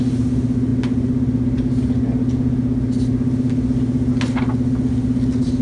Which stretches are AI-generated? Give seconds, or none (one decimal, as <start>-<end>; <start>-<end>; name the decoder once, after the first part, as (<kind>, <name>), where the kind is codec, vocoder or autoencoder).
none